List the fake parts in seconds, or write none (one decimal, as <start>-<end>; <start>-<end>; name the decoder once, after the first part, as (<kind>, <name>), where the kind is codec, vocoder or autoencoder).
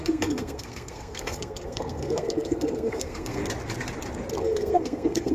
0.0-3.4 (codec, SNAC); 4.4-5.3